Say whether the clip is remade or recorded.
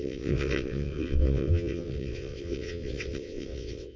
remade